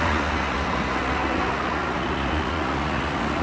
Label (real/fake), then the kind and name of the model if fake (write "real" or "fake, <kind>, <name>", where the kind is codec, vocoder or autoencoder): fake, vocoder, Vocos